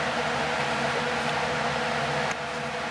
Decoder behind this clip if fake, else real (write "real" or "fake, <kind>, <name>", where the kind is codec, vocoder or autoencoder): real